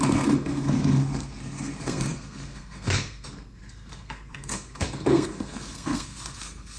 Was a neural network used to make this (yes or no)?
yes